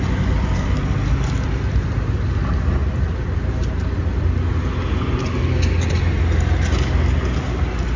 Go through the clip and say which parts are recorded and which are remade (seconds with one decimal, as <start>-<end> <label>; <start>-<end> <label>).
0.0-8.0 recorded